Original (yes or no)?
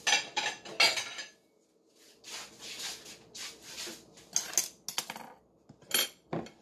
yes